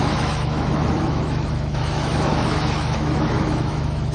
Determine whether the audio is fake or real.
fake